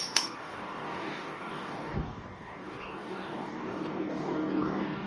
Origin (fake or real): fake